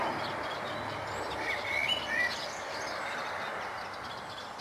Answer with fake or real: real